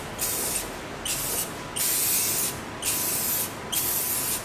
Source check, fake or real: real